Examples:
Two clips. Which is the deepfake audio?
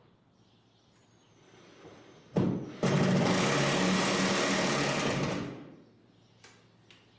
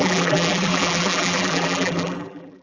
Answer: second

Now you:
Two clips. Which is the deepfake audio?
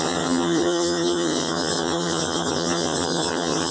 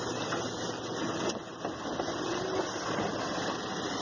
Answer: first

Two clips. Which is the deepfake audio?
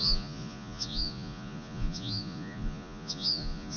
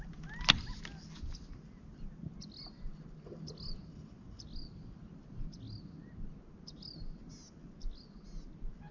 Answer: first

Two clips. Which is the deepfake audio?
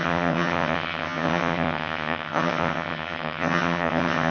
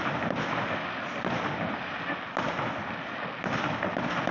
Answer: first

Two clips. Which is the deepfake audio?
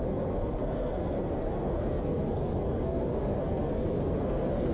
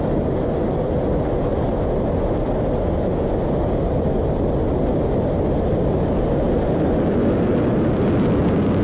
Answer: first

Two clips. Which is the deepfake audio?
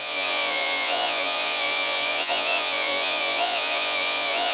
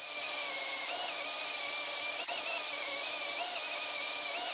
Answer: first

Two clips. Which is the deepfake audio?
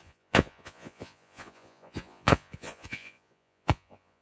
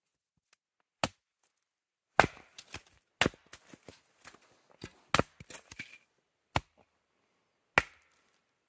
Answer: first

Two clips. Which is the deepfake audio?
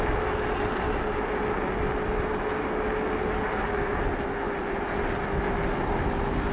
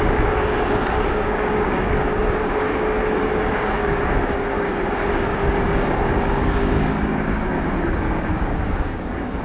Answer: second